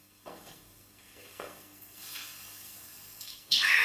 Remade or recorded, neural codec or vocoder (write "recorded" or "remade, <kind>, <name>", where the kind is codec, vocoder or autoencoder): remade, codec, SNAC